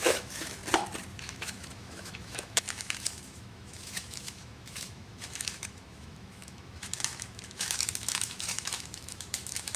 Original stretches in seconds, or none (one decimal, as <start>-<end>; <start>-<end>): 0.6-1.1